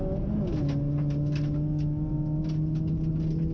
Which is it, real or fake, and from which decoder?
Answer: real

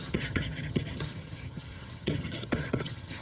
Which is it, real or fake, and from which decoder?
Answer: fake, vocoder, HiFi-GAN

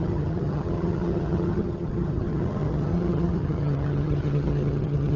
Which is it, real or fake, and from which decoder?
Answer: fake, vocoder, HiFi-GAN